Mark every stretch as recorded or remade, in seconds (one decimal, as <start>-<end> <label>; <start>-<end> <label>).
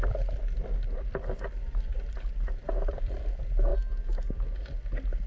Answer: 0.0-1.6 recorded; 1.6-2.2 remade; 2.2-2.6 recorded; 2.6-3.2 remade; 3.2-5.3 recorded